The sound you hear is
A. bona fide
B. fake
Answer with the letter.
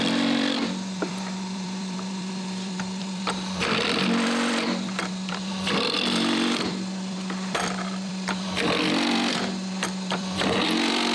B